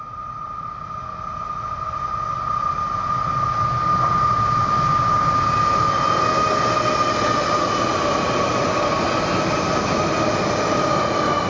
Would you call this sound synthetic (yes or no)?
no